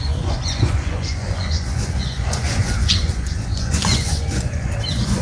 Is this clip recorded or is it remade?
remade